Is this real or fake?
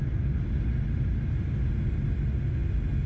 real